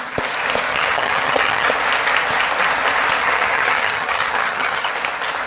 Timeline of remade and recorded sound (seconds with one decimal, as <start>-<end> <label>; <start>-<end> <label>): 0.0-0.7 recorded; 0.7-1.7 remade; 1.7-3.2 recorded; 3.2-4.9 remade; 4.9-5.5 recorded